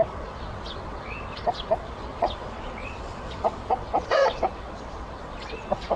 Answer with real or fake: fake